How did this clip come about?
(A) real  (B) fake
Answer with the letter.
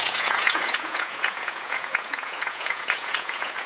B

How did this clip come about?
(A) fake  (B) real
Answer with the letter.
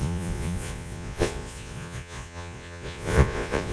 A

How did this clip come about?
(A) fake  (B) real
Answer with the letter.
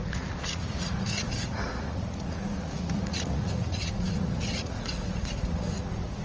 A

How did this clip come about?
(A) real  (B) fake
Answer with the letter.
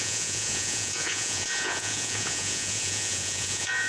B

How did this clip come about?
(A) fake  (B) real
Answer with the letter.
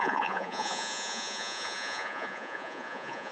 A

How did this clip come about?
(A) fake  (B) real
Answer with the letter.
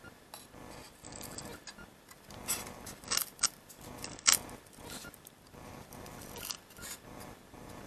B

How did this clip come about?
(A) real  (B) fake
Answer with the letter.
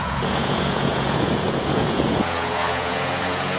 B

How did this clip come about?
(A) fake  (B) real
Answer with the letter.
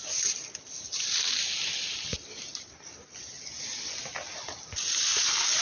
B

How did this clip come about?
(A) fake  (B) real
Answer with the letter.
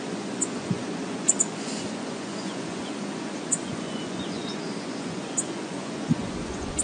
A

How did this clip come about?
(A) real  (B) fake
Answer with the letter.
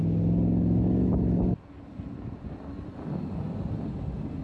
A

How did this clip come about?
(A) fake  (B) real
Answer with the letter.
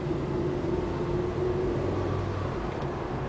B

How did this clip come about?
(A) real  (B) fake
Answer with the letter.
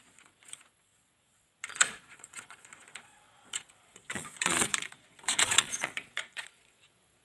B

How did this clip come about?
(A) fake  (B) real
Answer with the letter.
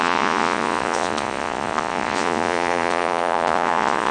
A